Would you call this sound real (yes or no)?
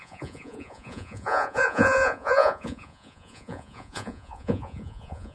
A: no